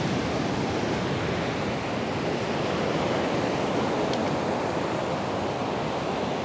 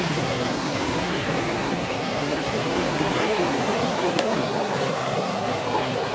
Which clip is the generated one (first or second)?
second